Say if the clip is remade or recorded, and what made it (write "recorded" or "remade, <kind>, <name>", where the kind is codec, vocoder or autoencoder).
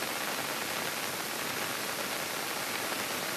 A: recorded